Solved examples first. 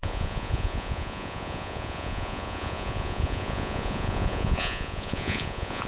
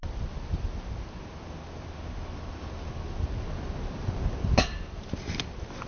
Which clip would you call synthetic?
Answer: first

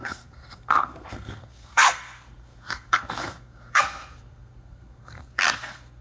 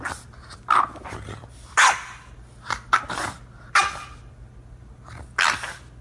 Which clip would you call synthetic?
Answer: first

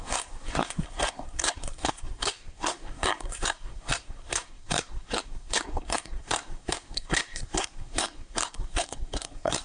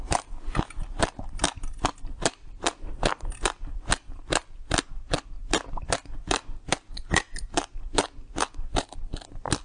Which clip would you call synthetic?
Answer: first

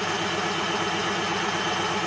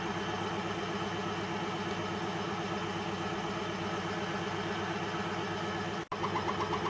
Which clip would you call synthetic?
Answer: first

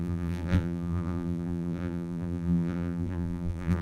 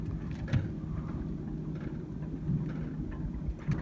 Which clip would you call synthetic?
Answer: first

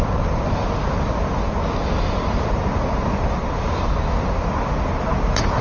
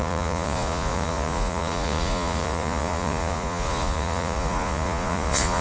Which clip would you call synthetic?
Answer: second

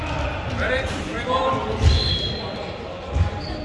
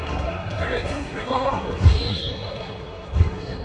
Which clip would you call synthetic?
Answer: second